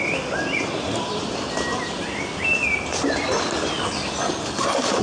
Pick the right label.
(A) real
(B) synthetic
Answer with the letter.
A